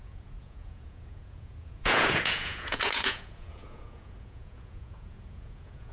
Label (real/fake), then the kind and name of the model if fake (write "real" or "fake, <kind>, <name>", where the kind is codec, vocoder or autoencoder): fake, vocoder, Vocos